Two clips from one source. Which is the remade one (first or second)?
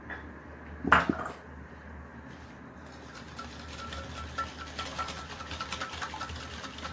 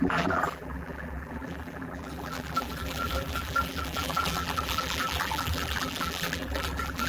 second